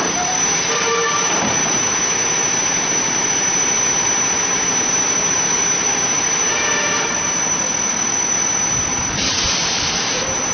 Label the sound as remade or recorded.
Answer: remade